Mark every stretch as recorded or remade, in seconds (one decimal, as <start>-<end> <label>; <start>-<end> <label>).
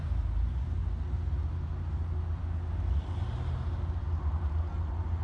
0.0-5.2 recorded